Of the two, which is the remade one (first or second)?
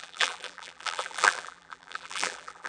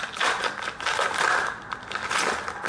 first